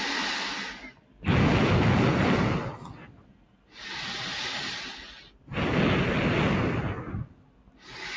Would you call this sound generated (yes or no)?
no